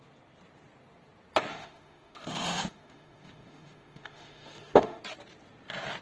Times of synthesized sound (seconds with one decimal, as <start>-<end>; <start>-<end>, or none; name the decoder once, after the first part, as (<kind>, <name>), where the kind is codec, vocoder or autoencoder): 1.5-5.0 (autoencoder, DAC-VAE)